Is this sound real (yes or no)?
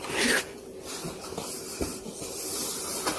yes